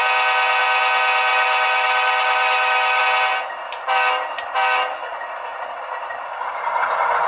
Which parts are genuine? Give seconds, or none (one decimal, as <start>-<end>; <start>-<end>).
0.0-1.3; 3.0-7.3